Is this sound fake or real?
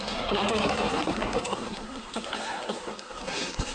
fake